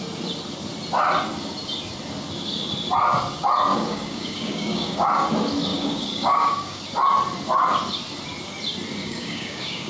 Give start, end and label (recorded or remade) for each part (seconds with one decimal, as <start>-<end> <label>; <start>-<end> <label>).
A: 0.0-3.7 recorded; 3.7-5.1 remade; 5.1-5.7 recorded; 5.7-6.8 remade; 6.8-9.0 recorded; 9.0-9.9 remade